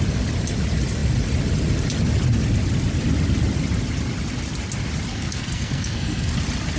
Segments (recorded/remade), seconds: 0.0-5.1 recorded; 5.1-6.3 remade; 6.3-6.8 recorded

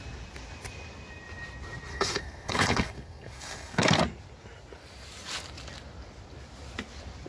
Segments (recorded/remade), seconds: 0.0-1.9 recorded; 1.9-4.0 remade; 4.0-7.3 recorded

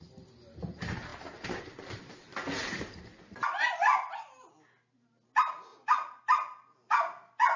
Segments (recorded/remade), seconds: 0.0-7.6 recorded

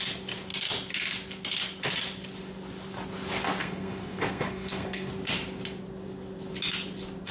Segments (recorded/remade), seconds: 0.0-3.6 recorded; 3.6-5.1 remade; 5.1-7.3 recorded

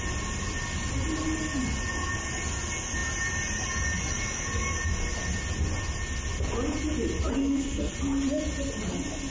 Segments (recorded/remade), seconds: 0.0-7.4 recorded; 7.4-7.9 remade; 7.9-9.3 recorded

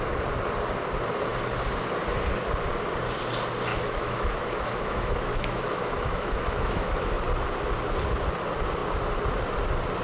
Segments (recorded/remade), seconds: 0.0-3.7 recorded; 3.7-7.2 remade; 7.2-10.0 recorded

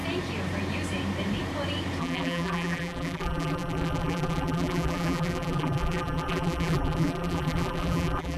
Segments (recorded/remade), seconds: 0.0-2.0 recorded; 2.0-8.4 remade

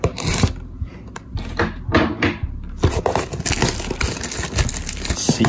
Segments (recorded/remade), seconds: 0.0-5.5 recorded